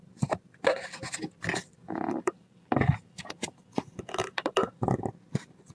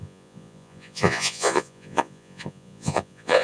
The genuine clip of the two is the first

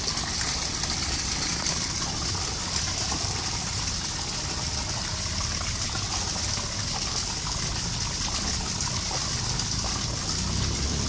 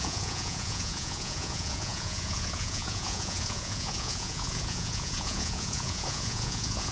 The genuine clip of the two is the first